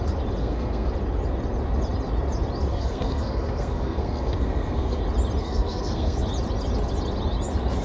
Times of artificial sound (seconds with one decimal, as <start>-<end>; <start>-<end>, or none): 0.4-0.9; 2.7-5.0; 5.4-6.2